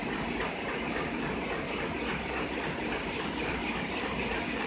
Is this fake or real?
real